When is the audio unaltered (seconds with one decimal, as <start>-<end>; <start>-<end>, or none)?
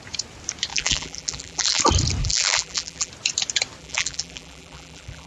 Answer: 0.0-0.7; 1.8-2.2; 3.1-3.8